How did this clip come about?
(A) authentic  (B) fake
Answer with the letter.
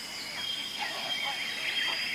A